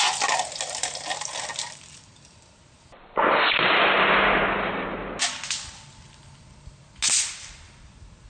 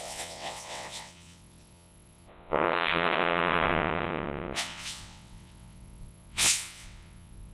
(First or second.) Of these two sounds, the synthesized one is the second